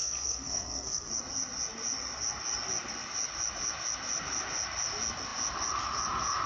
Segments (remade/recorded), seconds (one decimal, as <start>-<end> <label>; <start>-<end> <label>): 0.0-1.1 remade; 1.1-6.5 recorded